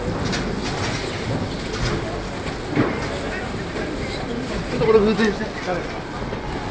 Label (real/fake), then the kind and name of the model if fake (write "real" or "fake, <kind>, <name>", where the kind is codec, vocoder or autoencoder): real